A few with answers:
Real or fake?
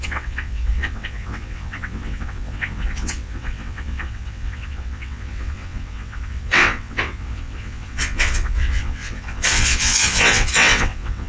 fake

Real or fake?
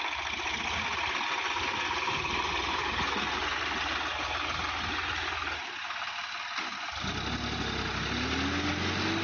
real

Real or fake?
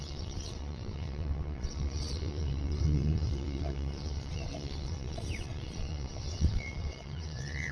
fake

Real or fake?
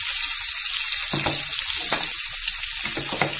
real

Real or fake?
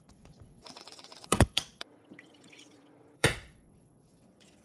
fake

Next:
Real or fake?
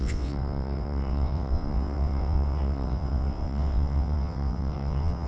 fake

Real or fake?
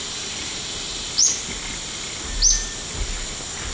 real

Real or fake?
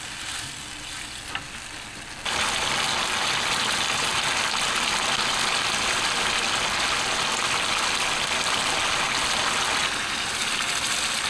real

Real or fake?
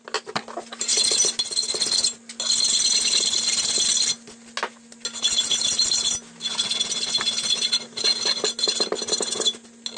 real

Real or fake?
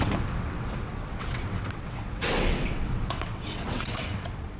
fake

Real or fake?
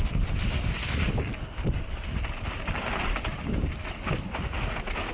real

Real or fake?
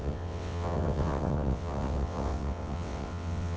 fake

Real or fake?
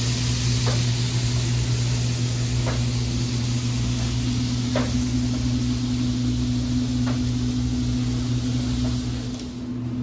real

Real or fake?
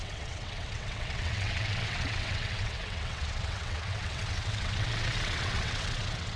fake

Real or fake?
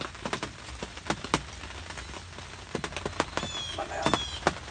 real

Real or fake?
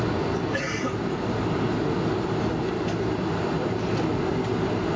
real